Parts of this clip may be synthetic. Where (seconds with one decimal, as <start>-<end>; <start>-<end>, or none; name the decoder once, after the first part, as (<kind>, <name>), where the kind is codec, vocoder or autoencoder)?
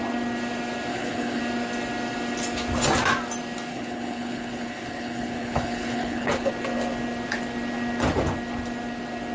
0.9-1.4 (codec, HILCodec); 3.7-6.5